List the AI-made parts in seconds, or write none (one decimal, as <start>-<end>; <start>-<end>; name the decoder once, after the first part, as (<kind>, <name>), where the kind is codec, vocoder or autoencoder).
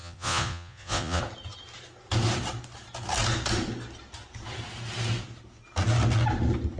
0.0-1.2 (vocoder, Vocos)